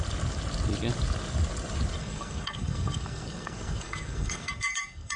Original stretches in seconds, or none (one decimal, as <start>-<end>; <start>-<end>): 0.0-2.0